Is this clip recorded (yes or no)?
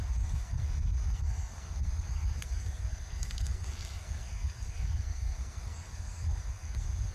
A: no